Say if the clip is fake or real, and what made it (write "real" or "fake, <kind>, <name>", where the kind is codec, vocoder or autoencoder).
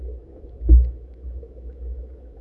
fake, autoencoder, DAC-VAE